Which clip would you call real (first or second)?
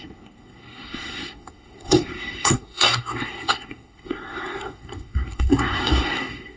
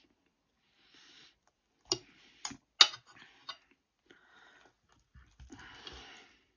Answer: second